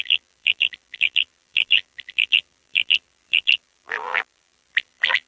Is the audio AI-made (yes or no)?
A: yes